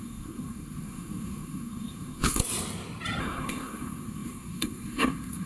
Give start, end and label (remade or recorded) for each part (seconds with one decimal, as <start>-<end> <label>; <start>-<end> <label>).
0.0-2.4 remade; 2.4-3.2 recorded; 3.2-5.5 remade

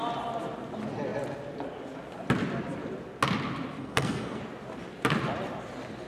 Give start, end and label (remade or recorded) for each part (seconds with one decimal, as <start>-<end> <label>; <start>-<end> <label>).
0.0-3.8 recorded; 3.8-4.4 remade; 4.4-6.1 recorded

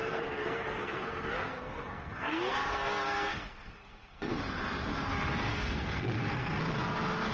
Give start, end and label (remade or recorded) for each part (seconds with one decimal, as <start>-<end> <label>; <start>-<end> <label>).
0.0-4.4 remade; 4.4-5.5 recorded; 5.5-6.6 remade; 6.6-7.3 recorded